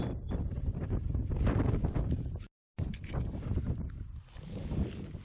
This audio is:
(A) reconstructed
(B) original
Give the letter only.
B